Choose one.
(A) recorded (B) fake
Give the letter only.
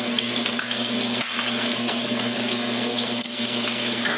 B